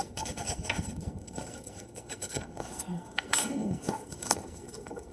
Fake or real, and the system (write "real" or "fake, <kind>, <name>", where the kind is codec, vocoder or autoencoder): fake, codec, SNAC